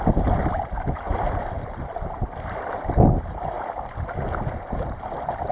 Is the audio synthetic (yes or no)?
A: no